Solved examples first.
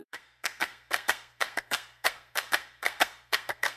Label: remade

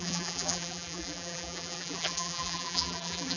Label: remade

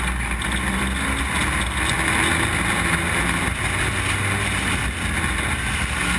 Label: recorded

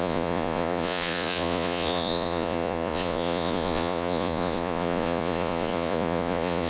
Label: remade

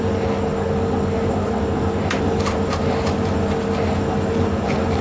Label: recorded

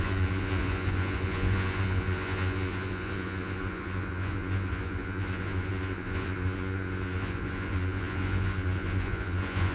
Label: remade